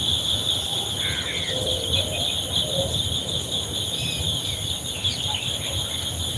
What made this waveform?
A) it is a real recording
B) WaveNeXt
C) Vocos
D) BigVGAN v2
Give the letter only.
A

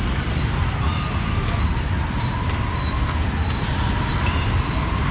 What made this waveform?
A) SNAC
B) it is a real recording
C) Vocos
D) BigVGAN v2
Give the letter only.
B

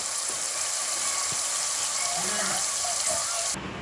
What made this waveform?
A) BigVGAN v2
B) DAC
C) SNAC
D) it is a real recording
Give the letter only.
D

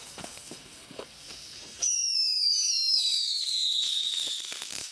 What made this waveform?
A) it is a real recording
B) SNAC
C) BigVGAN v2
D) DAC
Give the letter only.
B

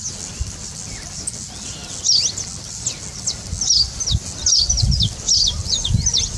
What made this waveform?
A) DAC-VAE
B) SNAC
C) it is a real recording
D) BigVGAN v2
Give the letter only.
C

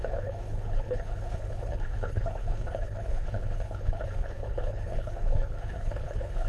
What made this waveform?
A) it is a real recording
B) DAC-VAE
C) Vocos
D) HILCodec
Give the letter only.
D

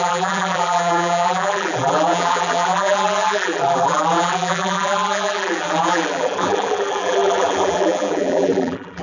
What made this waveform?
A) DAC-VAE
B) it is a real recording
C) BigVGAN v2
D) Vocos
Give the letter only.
C